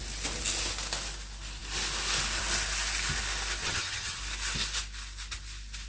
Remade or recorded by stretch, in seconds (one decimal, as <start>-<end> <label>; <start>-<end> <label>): 0.0-3.6 recorded; 3.6-4.2 remade; 4.2-5.9 recorded